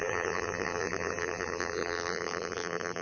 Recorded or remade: remade